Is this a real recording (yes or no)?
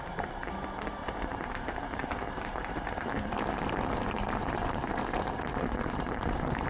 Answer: no